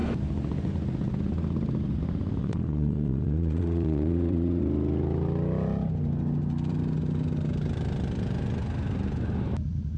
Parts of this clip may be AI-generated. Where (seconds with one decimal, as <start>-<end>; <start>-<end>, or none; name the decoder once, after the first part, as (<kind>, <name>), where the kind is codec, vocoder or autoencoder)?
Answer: 2.4-4.6 (vocoder, Vocos)